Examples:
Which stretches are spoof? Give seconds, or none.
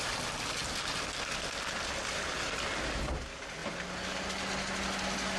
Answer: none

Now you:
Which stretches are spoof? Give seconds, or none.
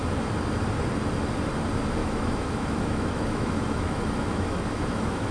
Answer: 2.0-5.3 (autoencoder, DAC-VAE)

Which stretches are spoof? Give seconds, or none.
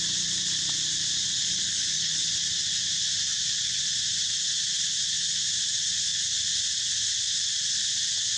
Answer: 1.4-2.3 (codec, HILCodec)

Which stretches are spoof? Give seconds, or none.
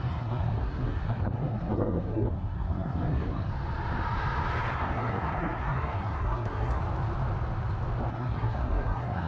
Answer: 0.0-3.5 (codec, SNAC); 4.7-6.8; 8.1-9.3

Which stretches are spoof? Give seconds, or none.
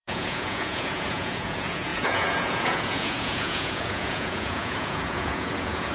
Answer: 0.0-5.9 (vocoder, Vocos)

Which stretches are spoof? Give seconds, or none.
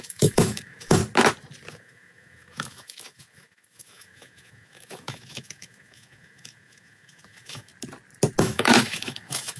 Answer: 0.0-1.0 (autoencoder, DAC-VAE); 1.7-7.7; 8.4-9.6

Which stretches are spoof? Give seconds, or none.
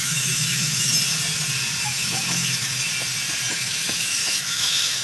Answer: 0.0-0.9 (autoencoder, DAC-VAE); 1.8-2.9; 3.5-5.0